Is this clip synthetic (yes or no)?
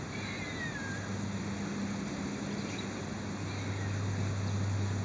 no